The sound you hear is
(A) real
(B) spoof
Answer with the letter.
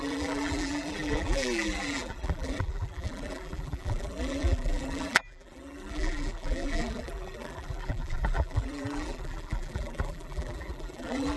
B